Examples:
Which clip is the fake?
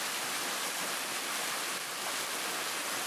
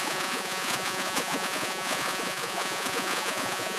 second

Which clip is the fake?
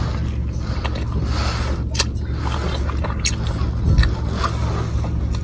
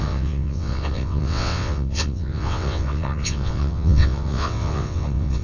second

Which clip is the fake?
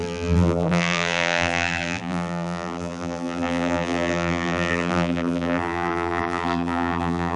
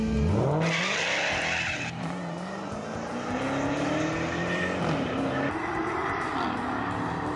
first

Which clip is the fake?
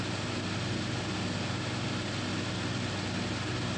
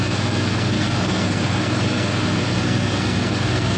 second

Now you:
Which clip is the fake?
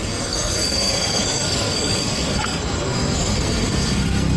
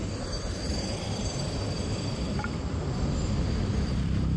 first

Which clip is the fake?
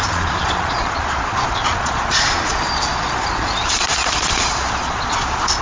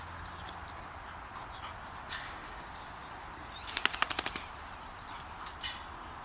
first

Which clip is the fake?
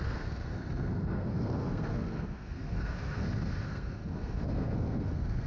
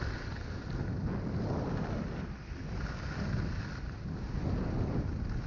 first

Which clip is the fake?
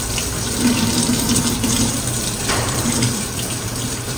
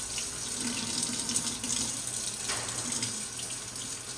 first